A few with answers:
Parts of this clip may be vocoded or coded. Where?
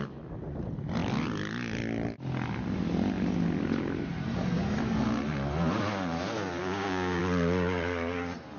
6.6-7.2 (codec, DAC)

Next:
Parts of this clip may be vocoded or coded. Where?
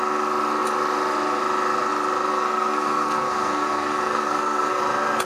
2.3-4.8 (codec, SNAC)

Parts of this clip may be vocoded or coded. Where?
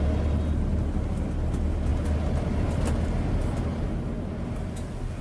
none